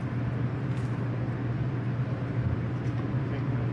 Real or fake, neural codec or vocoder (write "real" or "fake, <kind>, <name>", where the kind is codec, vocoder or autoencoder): real